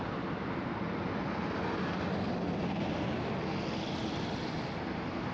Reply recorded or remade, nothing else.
recorded